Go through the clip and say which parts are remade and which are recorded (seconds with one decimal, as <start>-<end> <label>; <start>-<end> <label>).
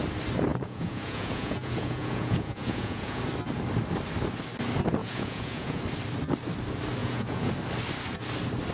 0.0-0.5 recorded; 0.5-3.2 remade; 3.2-5.0 recorded; 5.0-5.8 remade; 5.8-7.0 recorded; 7.0-7.5 remade; 7.5-8.7 recorded